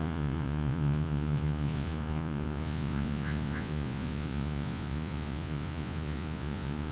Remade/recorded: remade